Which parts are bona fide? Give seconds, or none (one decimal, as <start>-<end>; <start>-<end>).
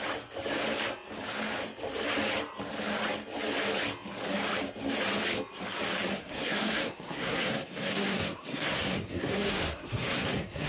0.0-6.1